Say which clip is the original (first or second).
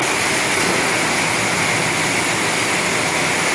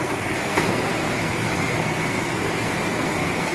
first